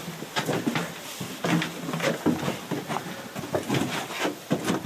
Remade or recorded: recorded